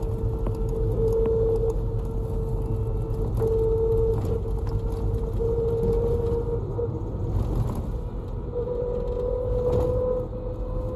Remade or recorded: recorded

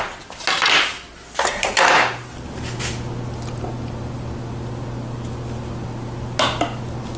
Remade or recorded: recorded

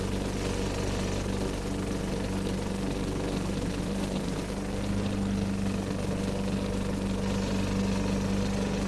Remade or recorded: recorded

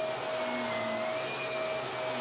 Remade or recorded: recorded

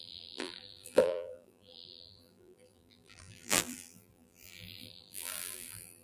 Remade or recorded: remade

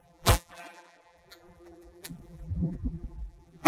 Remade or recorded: remade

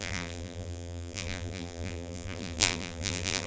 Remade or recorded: remade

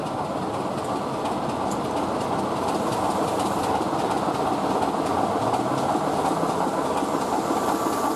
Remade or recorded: recorded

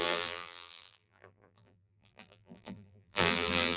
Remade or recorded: remade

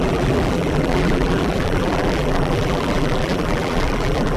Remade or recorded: remade